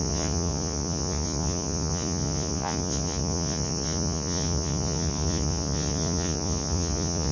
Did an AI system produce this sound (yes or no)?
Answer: yes